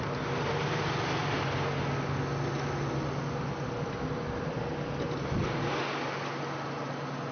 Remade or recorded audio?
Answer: recorded